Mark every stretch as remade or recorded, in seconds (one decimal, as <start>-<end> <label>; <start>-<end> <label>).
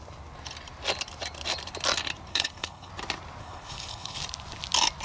0.0-2.3 recorded; 2.3-2.9 remade; 2.9-3.4 recorded; 3.4-4.2 remade; 4.2-5.0 recorded